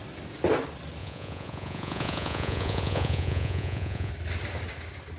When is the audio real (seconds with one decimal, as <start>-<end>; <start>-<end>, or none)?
0.0-1.0; 4.1-5.2